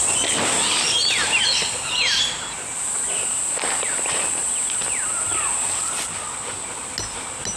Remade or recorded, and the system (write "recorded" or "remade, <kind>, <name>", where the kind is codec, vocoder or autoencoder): recorded